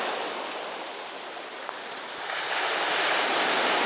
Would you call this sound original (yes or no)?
yes